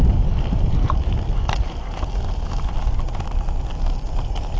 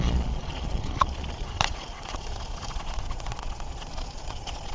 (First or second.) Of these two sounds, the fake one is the second